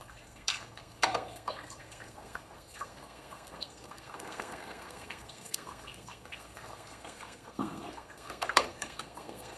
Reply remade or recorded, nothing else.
remade